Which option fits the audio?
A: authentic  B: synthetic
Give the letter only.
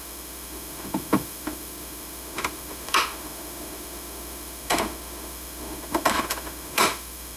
B